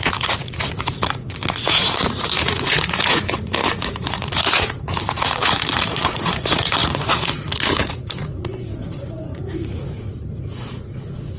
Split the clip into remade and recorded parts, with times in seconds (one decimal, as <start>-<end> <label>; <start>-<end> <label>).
0.0-11.4 remade